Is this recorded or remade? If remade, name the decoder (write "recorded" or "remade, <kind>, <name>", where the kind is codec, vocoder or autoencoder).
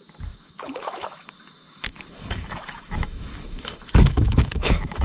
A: remade, autoencoder, DAC-VAE